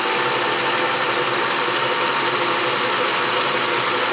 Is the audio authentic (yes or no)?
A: yes